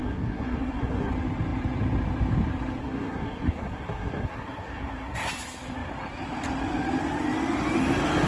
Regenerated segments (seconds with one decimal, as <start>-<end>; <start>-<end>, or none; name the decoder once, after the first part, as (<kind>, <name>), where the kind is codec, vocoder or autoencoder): 0.0-1.1 (codec, SNAC); 2.8-5.3

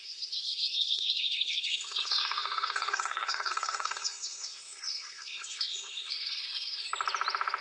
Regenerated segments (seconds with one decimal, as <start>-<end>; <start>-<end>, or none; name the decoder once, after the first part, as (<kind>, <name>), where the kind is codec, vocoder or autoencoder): 0.0-6.9 (codec, SNAC)